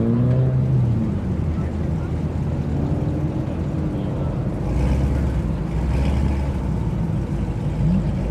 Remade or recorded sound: recorded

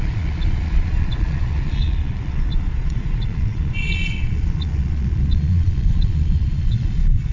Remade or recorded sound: remade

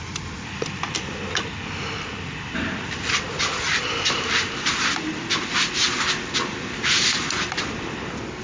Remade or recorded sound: remade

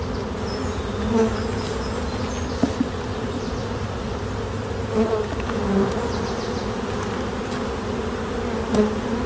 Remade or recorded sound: recorded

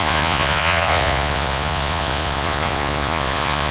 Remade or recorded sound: remade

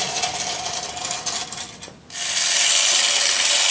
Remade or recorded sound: recorded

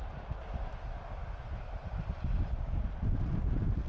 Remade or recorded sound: recorded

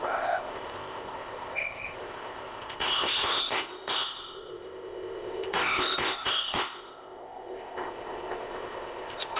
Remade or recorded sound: remade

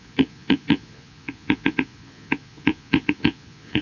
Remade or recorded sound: remade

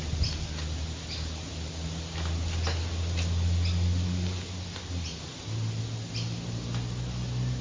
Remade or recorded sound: recorded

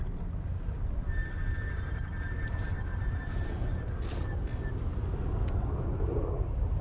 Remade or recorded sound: recorded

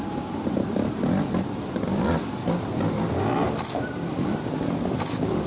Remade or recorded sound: recorded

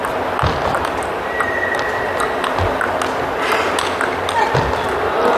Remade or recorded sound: recorded